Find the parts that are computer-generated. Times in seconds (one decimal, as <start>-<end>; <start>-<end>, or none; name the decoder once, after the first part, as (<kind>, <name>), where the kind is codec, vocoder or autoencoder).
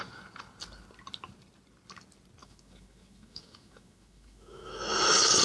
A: 2.4-5.4 (autoencoder, DAC-VAE)